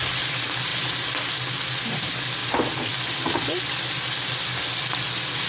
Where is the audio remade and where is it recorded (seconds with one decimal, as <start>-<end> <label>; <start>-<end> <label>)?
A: 0.0-2.4 recorded; 2.4-3.6 remade; 3.6-5.5 recorded